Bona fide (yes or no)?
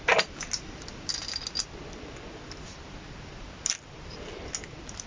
yes